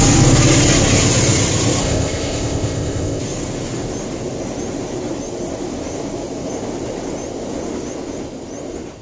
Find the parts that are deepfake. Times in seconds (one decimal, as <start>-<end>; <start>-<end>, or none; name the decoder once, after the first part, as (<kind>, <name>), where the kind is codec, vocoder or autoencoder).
1.8-3.2 (codec, ZipCodec)